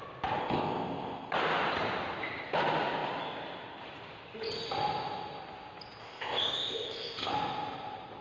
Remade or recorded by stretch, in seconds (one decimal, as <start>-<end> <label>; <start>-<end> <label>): 0.0-0.4 recorded; 0.4-1.3 remade; 1.3-6.0 recorded; 6.0-7.3 remade; 7.3-8.2 recorded